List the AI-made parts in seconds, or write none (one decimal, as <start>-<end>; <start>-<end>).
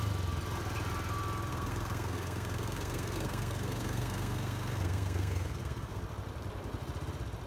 1.5-6.0